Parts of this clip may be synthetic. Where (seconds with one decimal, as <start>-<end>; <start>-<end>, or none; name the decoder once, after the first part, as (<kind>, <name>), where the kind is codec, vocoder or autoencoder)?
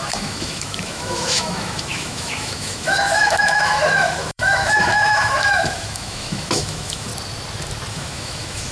0.0-7.1 (autoencoder, DAC-VAE); 7.9-8.7